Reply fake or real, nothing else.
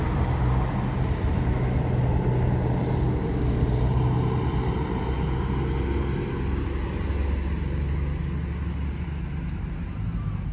real